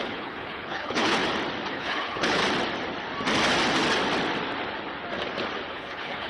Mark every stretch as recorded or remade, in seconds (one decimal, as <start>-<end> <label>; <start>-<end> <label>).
0.0-1.2 remade; 1.2-1.7 recorded; 1.7-2.4 remade; 2.4-5.7 recorded; 5.7-6.3 remade